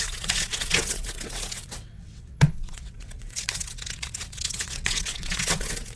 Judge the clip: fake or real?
fake